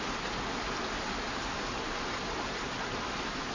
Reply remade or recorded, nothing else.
recorded